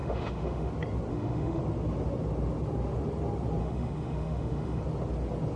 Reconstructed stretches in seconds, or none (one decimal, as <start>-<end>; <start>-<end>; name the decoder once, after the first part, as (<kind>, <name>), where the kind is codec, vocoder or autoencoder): 0.0-0.7 (autoencoder, DAC-VAE); 1.1-1.6; 3.6-4.8